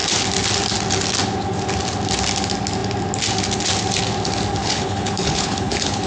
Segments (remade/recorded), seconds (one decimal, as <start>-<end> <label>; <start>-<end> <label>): 0.0-4.6 recorded; 4.6-6.1 remade

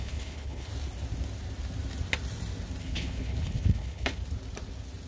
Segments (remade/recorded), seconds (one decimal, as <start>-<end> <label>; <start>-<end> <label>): 0.0-0.7 remade; 0.7-2.8 recorded; 2.8-4.2 remade; 4.2-5.1 recorded

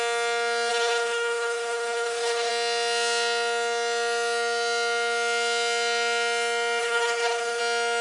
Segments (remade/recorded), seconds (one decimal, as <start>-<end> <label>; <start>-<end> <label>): 0.0-0.7 recorded; 0.7-2.5 remade; 2.5-6.8 recorded; 6.8-7.6 remade; 7.6-8.0 recorded

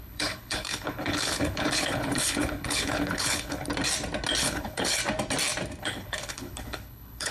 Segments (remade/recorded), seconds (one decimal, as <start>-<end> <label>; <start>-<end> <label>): 0.0-3.7 remade; 3.7-4.4 recorded; 4.4-5.0 remade; 5.0-5.8 recorded; 5.8-7.3 remade

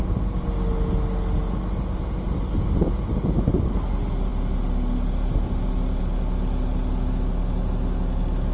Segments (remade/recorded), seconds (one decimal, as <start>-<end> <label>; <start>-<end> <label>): 0.0-8.5 recorded